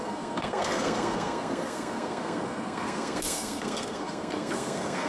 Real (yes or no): no